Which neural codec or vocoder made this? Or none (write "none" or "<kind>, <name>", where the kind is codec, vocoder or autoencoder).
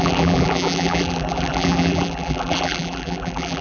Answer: vocoder, BigVGAN v2